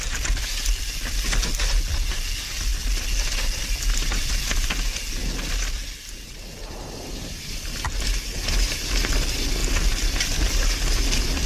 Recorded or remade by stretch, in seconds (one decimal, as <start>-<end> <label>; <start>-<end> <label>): 0.0-11.5 recorded

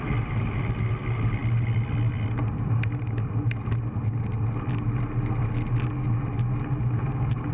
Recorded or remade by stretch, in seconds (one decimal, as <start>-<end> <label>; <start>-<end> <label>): 0.0-7.5 recorded

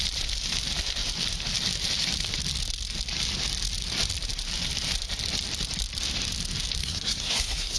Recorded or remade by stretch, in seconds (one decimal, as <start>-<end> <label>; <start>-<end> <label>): 0.0-6.8 recorded; 6.8-7.8 remade

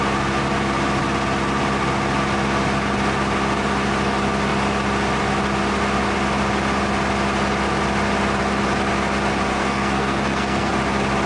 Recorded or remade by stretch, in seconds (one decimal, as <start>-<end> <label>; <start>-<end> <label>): 0.0-9.5 recorded; 9.5-10.7 remade; 10.7-11.3 recorded

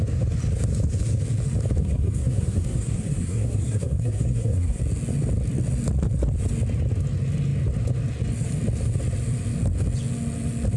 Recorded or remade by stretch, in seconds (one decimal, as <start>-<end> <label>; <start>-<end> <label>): 0.0-1.8 recorded; 1.8-4.8 remade; 4.8-10.8 recorded